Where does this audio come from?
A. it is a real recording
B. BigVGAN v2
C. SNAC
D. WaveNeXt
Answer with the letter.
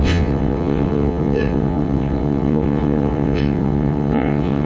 D